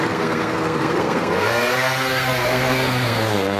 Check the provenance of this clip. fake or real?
fake